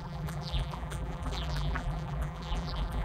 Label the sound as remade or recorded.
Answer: remade